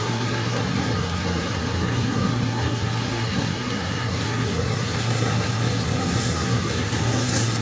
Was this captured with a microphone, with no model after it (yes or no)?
no